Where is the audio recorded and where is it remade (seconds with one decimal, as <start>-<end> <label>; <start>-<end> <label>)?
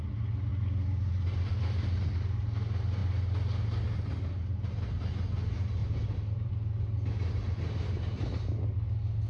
0.0-5.8 recorded; 5.8-6.5 remade; 6.5-9.3 recorded